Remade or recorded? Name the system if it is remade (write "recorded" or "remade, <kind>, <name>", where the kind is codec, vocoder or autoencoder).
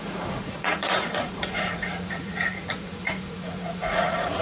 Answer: remade, vocoder, Vocos